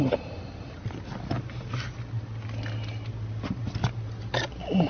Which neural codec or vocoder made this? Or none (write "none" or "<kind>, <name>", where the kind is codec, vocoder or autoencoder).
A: none